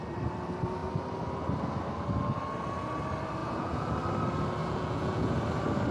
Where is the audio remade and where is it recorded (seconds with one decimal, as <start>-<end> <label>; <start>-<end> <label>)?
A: 0.0-3.4 recorded; 3.4-3.9 remade; 3.9-4.6 recorded; 4.6-5.3 remade; 5.3-5.9 recorded

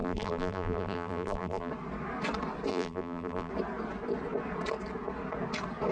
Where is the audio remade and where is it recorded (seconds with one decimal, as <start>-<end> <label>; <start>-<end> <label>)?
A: 0.0-1.7 remade; 1.7-2.7 recorded; 2.7-3.5 remade; 3.5-5.9 recorded

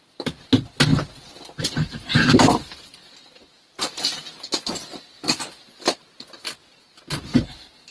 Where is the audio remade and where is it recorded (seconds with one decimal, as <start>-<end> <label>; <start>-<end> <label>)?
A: 0.0-7.9 recorded

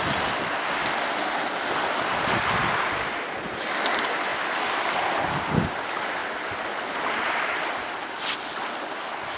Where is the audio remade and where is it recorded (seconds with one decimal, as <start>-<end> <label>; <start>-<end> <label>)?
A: 0.0-9.4 recorded

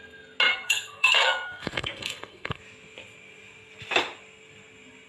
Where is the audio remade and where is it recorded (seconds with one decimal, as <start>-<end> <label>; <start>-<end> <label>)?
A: 0.0-0.5 recorded; 0.5-2.6 remade; 2.6-5.1 recorded